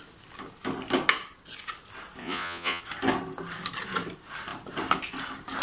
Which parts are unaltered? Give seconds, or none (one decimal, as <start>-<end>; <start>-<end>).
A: 0.0-2.2; 2.8-5.6